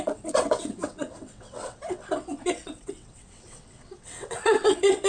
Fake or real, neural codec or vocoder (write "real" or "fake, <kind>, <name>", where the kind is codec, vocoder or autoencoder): fake, vocoder, WaveNeXt